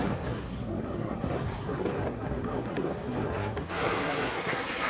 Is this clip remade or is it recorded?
remade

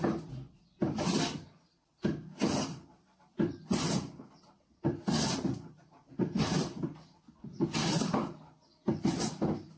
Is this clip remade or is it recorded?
remade